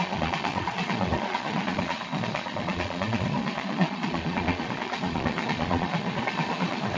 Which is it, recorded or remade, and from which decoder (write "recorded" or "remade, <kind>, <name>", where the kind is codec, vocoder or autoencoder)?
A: remade, vocoder, Vocos